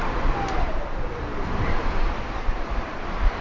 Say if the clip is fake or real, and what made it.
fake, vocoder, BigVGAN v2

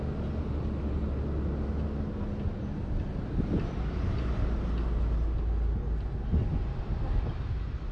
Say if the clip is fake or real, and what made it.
real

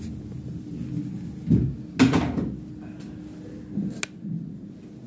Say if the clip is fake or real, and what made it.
real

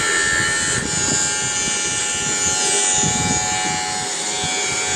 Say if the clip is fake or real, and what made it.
real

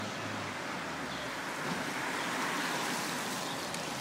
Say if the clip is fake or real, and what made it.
real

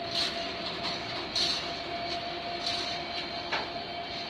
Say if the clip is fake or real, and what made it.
real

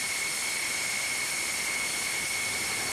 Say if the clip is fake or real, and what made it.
real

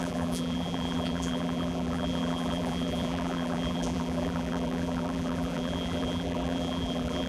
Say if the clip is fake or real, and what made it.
fake, vocoder, BigVGAN v2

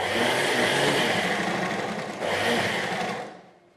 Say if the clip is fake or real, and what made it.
real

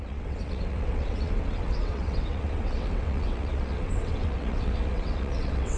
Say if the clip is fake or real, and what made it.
fake, vocoder, WaveNeXt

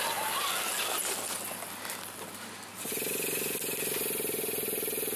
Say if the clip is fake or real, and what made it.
real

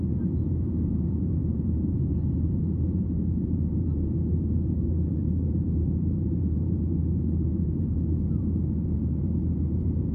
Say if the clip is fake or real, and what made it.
fake, vocoder, BigVGAN v2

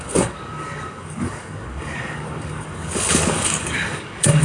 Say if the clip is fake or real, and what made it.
fake, codec, DAC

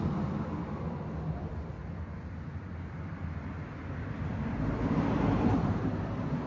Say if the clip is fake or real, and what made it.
fake, vocoder, BigVGAN v2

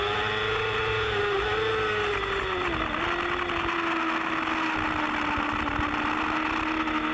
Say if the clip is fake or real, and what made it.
real